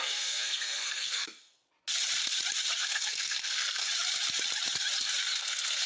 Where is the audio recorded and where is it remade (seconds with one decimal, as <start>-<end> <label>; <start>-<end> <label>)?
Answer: 0.0-1.6 remade; 1.6-2.8 recorded; 2.8-3.8 remade; 3.8-5.4 recorded; 5.4-5.9 remade